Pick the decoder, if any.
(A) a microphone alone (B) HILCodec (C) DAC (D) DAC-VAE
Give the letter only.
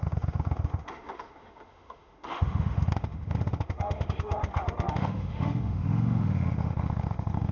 D